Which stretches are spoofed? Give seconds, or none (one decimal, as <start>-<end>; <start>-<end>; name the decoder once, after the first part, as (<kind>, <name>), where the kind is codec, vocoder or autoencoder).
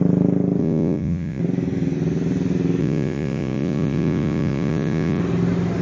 0.6-1.4 (vocoder, Vocos); 2.8-5.2